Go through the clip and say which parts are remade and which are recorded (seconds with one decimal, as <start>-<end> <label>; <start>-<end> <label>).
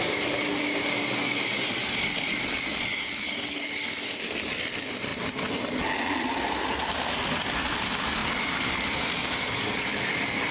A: 0.0-10.5 recorded